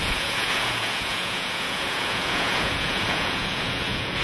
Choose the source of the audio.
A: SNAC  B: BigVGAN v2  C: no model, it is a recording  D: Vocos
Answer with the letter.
D